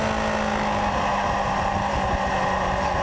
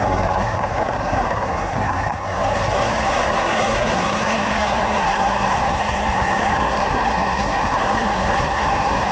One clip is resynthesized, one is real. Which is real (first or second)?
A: first